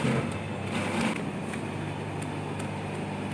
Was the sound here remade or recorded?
recorded